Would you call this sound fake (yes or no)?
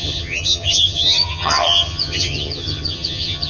yes